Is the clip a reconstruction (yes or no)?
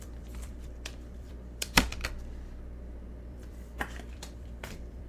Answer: yes